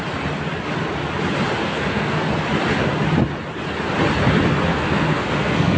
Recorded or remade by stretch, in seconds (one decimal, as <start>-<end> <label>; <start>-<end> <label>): 0.0-1.6 recorded; 1.6-2.2 remade; 2.2-4.7 recorded; 4.7-5.8 remade